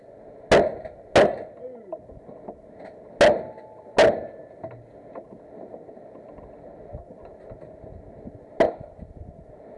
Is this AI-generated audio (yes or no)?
no